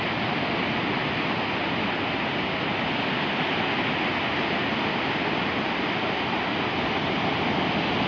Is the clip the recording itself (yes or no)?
yes